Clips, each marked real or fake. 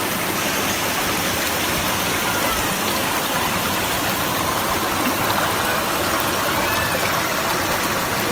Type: real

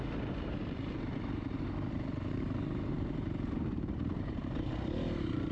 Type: fake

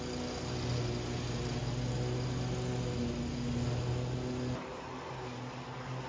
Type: real